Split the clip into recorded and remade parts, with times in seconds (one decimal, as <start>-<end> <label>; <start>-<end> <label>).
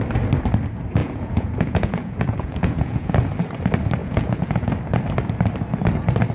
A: 0.0-1.0 recorded; 1.0-3.1 remade; 3.1-4.0 recorded; 4.0-4.7 remade; 4.7-6.3 recorded